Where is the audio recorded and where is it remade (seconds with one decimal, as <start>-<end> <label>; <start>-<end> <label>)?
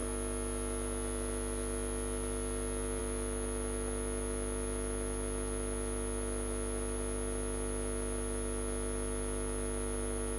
0.0-10.4 recorded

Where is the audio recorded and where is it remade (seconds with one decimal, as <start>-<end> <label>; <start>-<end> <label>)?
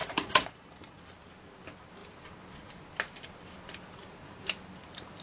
0.0-1.0 remade; 1.0-5.2 recorded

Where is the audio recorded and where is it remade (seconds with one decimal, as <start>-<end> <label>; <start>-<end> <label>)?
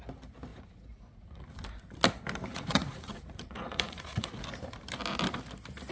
0.0-0.5 recorded; 0.5-1.4 remade; 1.4-2.5 recorded; 2.5-4.3 remade; 4.3-5.9 recorded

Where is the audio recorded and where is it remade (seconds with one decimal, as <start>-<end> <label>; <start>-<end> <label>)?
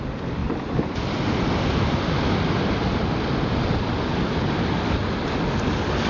0.0-6.1 recorded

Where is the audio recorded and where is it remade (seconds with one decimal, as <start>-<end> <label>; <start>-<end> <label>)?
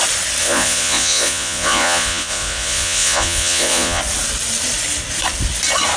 0.0-0.4 recorded; 0.4-4.0 remade; 4.0-6.0 recorded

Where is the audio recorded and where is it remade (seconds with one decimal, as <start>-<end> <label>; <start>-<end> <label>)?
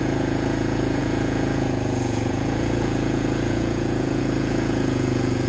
0.0-5.5 remade